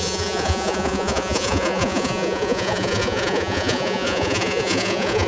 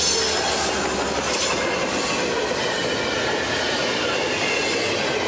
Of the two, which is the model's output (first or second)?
first